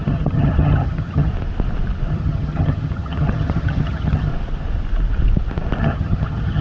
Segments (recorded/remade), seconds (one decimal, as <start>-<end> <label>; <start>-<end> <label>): 0.0-1.3 remade; 1.3-2.1 recorded; 2.1-4.3 remade; 4.3-5.8 recorded; 5.8-6.6 remade